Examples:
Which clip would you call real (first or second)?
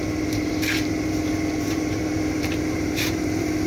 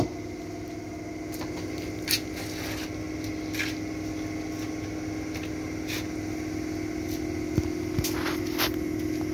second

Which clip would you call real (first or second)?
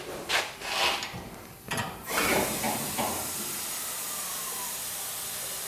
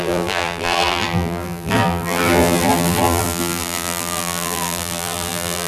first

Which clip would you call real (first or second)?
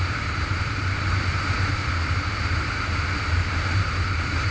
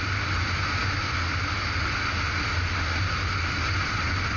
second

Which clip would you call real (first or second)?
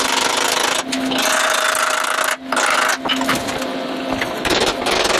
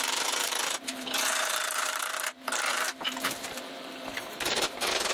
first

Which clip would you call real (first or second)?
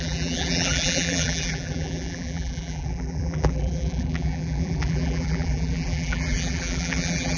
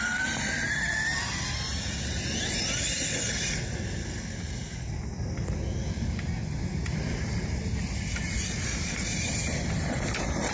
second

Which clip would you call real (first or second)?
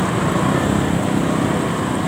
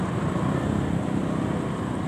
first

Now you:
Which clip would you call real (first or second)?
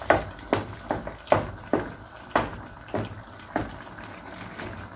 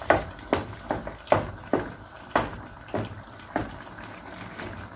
first